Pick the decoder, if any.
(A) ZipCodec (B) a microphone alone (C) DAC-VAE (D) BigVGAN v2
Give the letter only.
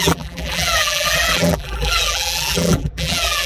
D